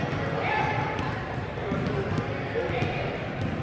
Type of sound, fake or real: real